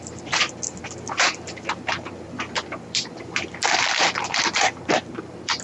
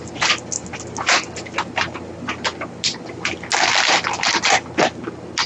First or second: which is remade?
first